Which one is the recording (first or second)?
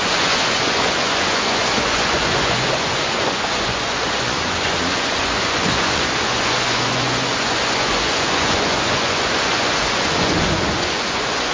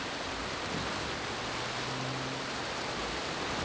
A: second